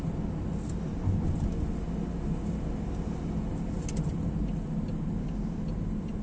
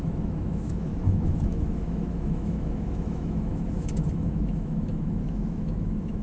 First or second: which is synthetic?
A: second